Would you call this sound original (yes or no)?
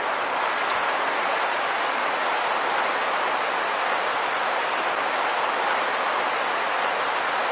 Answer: yes